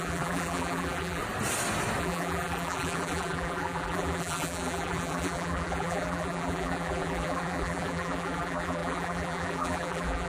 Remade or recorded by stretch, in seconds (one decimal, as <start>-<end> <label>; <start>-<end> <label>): 0.0-1.2 remade; 1.2-2.0 recorded; 2.0-10.3 remade